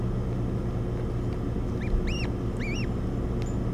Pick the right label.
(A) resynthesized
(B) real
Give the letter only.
B